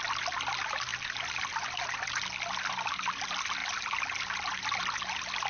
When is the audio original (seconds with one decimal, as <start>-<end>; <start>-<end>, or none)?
0.0-5.5